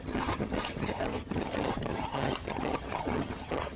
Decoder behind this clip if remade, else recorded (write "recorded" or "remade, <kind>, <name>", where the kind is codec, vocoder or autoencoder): remade, vocoder, HiFi-GAN